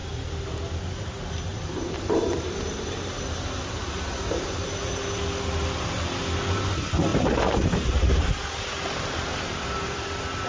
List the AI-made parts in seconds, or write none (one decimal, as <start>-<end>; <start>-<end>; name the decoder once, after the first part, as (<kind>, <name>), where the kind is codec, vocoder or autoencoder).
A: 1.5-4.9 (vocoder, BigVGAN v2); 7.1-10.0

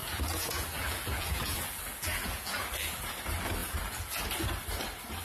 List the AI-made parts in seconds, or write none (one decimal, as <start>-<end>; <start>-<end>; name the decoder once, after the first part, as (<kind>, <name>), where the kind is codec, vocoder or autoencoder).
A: 0.0-3.1 (vocoder, BigVGAN v2); 3.6-4.2

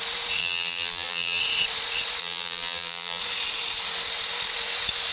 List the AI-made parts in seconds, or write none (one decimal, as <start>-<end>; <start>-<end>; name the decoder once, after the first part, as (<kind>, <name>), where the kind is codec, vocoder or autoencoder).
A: 0.4-1.4 (vocoder, BigVGAN v2); 2.2-3.2

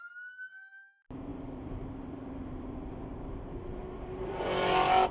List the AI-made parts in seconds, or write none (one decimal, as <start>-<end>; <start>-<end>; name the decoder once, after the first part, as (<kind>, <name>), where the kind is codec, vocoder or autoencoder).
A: 1.3-4.4 (vocoder, BigVGAN v2)

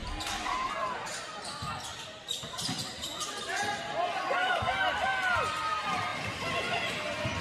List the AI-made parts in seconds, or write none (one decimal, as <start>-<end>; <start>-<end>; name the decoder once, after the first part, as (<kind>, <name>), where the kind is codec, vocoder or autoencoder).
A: 0.0-0.7 (vocoder, BigVGAN v2); 6.1-6.9

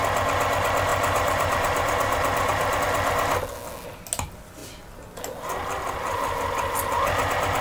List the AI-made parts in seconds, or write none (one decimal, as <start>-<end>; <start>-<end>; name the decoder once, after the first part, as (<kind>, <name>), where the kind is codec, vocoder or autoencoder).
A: 0.9-2.8 (vocoder, BigVGAN v2)

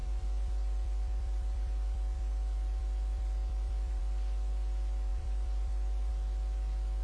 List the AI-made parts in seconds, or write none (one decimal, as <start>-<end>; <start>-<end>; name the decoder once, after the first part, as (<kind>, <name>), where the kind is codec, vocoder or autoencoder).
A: 0.0-4.0 (vocoder, BigVGAN v2); 5.1-6.1

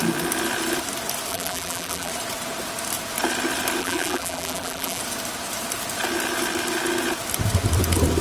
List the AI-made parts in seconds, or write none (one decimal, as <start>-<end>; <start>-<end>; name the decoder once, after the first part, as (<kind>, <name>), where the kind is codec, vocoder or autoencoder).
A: 1.3-2.1 (vocoder, BigVGAN v2); 3.8-5.0